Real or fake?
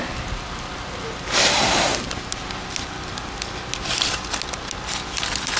real